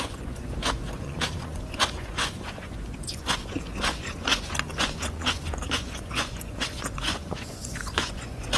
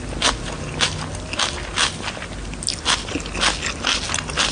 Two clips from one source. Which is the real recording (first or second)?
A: second